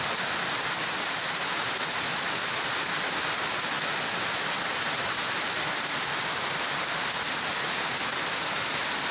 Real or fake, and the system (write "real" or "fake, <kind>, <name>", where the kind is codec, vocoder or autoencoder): real